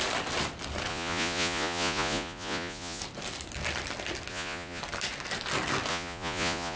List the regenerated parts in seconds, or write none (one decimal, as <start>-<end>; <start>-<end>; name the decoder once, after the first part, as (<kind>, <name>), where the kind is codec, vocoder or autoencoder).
0.9-3.0 (vocoder, Vocos); 4.3-4.8; 5.9-6.8